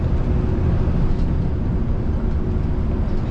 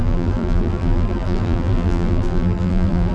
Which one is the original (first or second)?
first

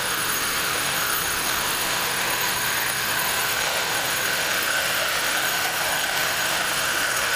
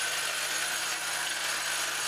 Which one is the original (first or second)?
second